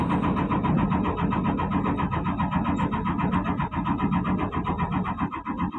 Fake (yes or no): no